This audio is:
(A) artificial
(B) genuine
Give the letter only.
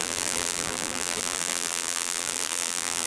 A